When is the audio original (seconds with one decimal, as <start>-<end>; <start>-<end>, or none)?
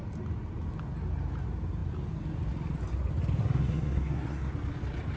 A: 0.0-3.4; 4.5-5.2